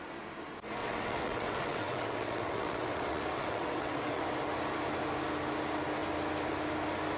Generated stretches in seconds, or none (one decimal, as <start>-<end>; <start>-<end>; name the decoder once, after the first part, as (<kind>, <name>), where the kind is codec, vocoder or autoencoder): 0.8-4.2 (vocoder, WaveNeXt)